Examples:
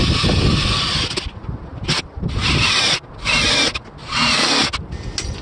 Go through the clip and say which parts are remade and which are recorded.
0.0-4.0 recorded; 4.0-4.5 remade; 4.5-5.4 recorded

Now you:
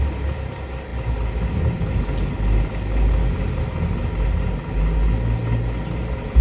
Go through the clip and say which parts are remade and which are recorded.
0.0-6.4 recorded